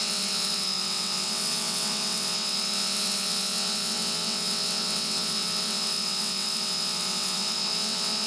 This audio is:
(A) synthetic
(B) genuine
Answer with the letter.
A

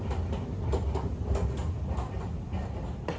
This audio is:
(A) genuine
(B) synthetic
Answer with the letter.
A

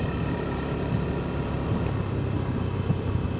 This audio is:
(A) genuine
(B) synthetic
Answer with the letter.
A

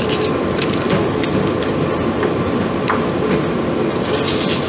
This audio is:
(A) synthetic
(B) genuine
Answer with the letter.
B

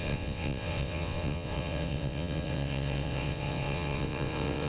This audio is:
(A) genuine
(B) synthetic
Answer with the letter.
B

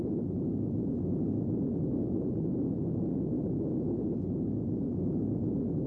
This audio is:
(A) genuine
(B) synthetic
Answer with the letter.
A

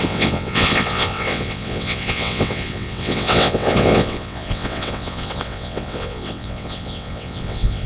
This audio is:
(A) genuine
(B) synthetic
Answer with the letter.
B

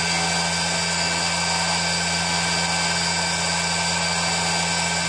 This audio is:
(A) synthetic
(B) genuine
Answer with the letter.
B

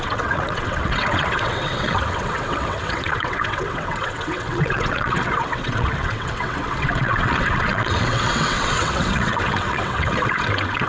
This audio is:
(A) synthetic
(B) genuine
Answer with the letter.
A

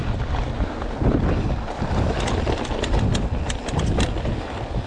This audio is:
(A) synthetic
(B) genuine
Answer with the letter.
B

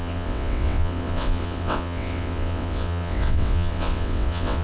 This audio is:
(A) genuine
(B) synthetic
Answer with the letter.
B